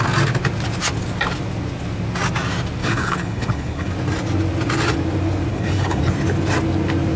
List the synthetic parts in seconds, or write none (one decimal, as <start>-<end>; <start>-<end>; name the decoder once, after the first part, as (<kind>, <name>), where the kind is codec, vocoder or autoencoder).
2.8-3.9 (codec, HILCodec); 5.5-6.0